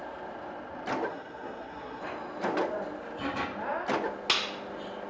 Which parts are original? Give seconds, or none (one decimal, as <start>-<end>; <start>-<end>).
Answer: 0.0-1.1; 2.0-5.1